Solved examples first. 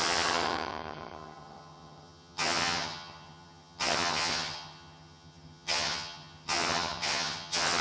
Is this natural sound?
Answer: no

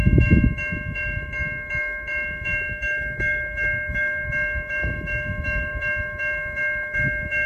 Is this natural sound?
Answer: no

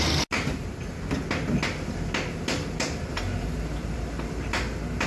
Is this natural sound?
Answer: yes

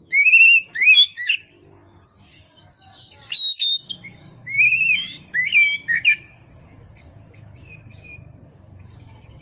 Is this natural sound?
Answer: no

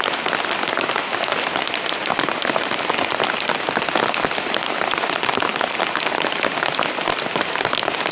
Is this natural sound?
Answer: no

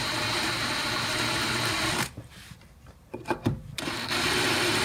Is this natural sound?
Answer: no